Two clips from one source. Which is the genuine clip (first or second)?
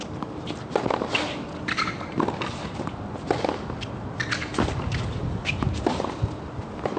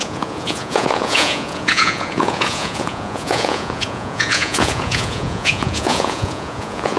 first